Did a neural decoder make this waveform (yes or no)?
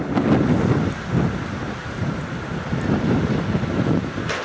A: no